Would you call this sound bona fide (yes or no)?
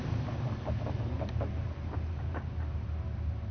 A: yes